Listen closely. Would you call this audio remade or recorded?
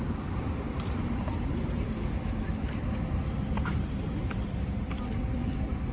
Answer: remade